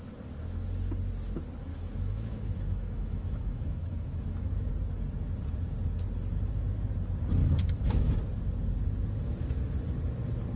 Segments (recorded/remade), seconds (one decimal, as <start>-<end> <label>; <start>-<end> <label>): 0.0-1.7 recorded; 1.7-4.7 remade; 4.7-7.4 recorded; 7.4-8.1 remade; 8.1-10.6 recorded